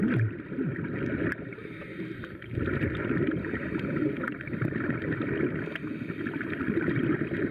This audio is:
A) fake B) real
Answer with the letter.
B